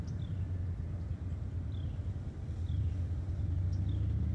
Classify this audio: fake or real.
real